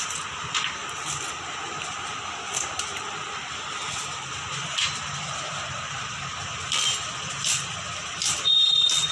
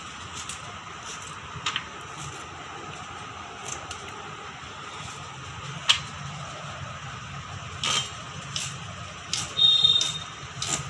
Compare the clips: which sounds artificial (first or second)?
first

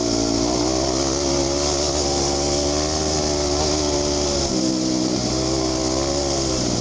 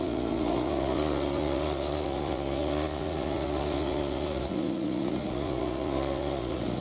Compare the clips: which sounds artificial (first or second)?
second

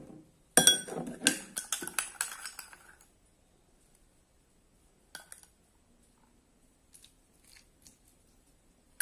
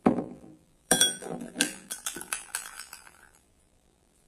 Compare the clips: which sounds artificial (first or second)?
second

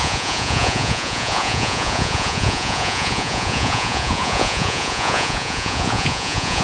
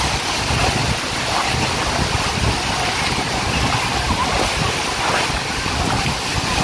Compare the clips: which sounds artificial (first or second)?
first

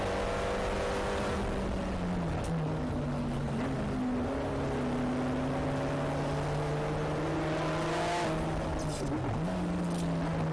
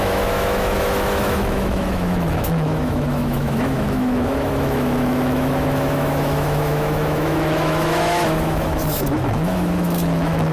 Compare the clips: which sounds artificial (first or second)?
second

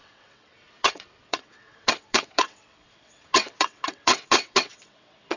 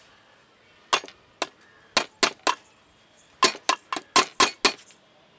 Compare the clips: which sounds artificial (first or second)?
first